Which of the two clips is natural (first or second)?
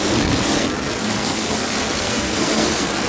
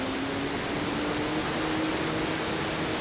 second